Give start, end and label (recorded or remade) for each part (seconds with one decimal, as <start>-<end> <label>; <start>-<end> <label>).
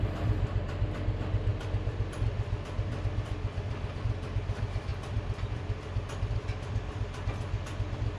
0.0-8.2 recorded